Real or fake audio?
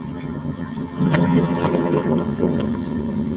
fake